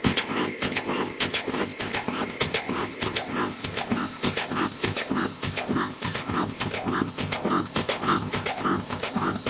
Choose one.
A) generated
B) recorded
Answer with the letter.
A